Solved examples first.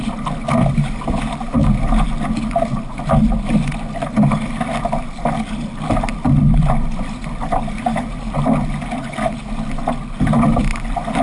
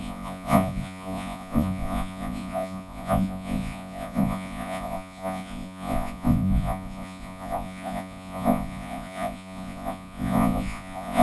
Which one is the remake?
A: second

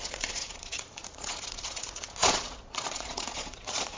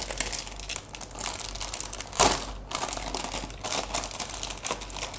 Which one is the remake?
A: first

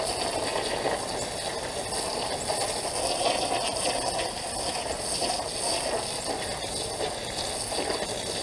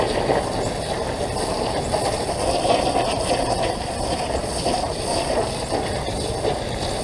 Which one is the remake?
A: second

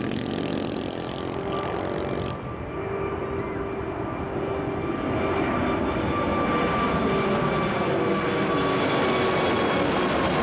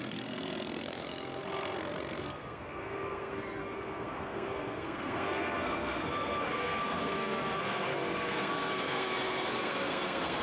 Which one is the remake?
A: second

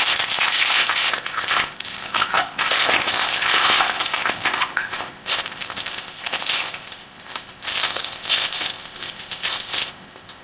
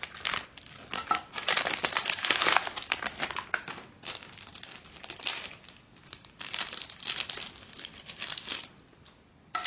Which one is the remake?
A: first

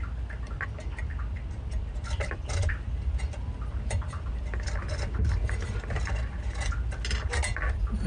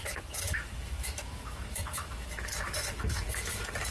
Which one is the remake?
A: second